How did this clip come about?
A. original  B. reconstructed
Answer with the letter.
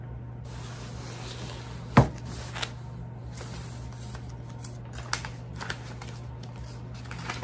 A